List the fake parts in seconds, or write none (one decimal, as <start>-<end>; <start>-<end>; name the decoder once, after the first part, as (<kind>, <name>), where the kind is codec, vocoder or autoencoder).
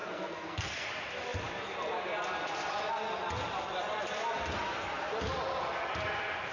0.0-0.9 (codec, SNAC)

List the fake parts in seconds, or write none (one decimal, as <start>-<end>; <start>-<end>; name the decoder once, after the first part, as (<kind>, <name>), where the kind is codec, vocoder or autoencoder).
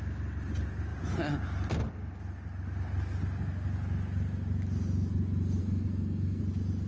5.6-6.4 (codec, SNAC)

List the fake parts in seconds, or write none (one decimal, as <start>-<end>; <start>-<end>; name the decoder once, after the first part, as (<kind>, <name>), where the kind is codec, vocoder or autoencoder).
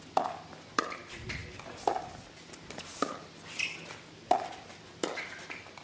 none